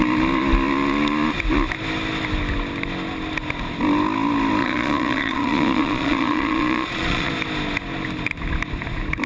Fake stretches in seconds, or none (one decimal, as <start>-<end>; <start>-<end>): 4.6-7.3